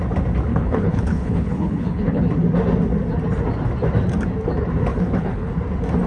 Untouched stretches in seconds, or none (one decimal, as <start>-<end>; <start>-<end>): 0.0-0.5; 2.2-4.9; 5.5-6.1

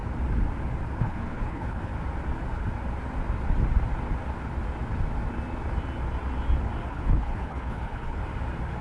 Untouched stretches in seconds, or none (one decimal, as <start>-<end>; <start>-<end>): 0.0-1.0; 1.9-6.9; 8.2-8.8

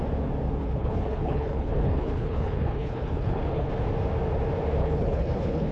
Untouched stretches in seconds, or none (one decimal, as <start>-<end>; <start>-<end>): 0.0-0.6; 3.7-4.8

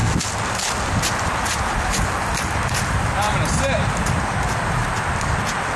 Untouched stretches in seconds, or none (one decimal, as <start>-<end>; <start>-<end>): 0.0-5.8

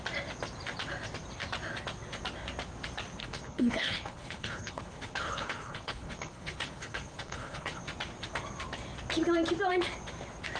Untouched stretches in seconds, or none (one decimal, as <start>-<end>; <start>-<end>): 0.0-3.2; 7.8-10.6